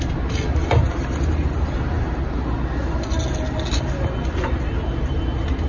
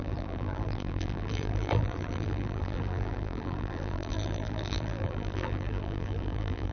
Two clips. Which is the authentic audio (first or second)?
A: first